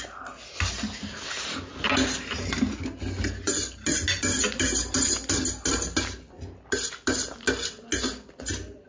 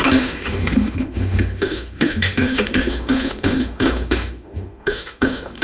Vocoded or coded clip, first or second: second